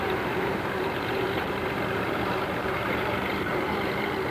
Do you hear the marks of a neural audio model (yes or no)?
yes